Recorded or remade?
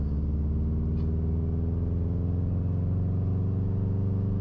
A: recorded